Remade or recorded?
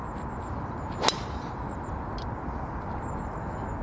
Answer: recorded